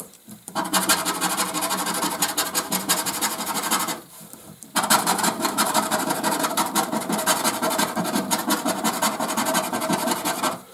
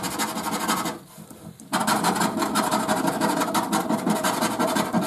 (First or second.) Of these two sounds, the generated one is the first